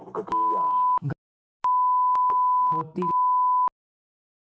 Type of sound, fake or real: real